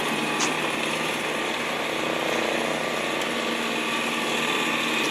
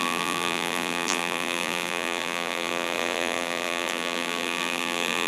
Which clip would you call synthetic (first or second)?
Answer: second